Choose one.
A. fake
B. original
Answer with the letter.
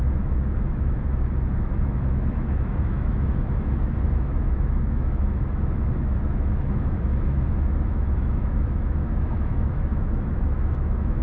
A